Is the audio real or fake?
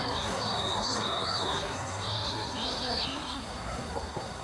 fake